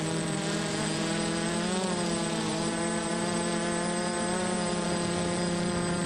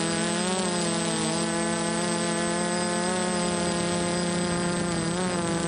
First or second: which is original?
second